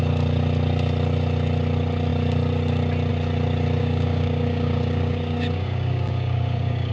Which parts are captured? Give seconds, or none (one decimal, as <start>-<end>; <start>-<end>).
0.0-3.8